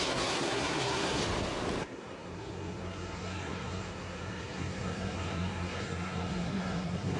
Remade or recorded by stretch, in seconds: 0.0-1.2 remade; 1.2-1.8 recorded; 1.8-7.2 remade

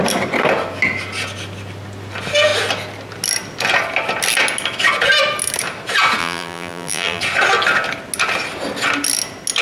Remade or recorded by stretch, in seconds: 0.0-6.2 recorded; 6.2-7.2 remade; 7.2-9.6 recorded

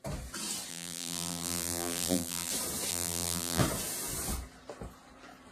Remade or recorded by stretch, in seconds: 0.0-0.7 recorded; 0.7-2.5 remade; 2.5-2.9 recorded; 2.9-3.6 remade; 3.6-5.5 recorded

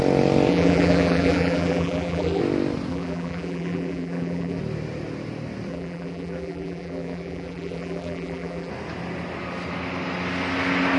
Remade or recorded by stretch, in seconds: 0.0-0.5 recorded; 0.5-2.4 remade; 2.4-2.9 recorded; 2.9-4.6 remade; 4.6-5.7 recorded; 5.7-8.7 remade; 8.7-11.0 recorded

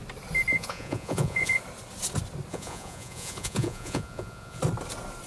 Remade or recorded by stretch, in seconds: 0.0-0.5 recorded; 0.5-1.6 remade; 1.6-2.5 recorded; 2.5-4.6 remade; 4.6-5.3 recorded